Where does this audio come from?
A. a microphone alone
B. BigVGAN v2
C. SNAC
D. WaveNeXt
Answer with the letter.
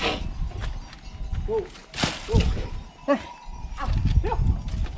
A